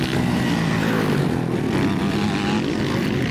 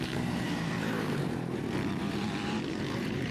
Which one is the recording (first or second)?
first